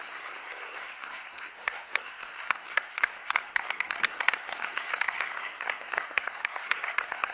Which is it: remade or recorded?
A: remade